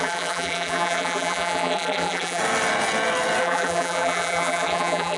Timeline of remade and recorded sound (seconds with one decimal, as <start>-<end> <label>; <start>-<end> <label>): 0.0-2.4 remade; 2.4-3.4 recorded; 3.4-5.2 remade